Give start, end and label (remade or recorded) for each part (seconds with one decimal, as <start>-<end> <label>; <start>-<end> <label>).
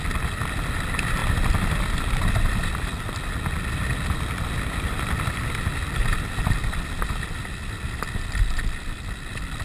0.0-9.6 recorded